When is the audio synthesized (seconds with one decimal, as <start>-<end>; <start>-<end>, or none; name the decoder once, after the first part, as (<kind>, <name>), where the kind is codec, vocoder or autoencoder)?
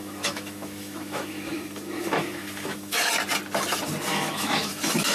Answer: 0.0-3.1 (autoencoder, DAC-VAE); 4.1-5.1